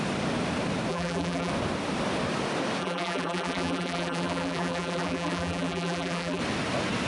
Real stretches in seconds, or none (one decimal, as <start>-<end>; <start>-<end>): 0.0-0.9; 1.5-2.8; 6.4-7.1